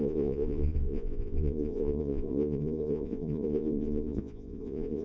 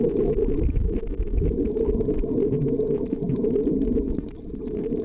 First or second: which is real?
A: second